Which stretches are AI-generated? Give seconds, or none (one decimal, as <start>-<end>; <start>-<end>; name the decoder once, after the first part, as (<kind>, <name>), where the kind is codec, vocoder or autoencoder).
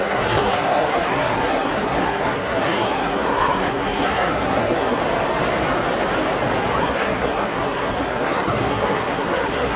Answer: 0.0-5.0 (codec, SNAC); 6.8-9.8